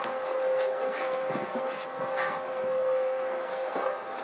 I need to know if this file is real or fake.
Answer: fake